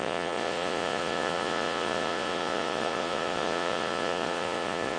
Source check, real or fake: fake